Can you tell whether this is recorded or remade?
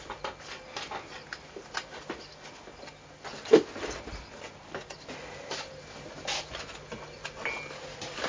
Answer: recorded